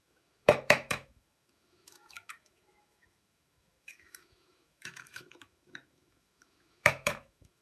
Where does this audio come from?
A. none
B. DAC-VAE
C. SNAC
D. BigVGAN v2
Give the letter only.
B